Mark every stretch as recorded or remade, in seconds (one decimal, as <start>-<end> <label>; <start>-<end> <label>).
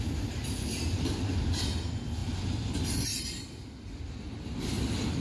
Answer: 0.0-5.2 recorded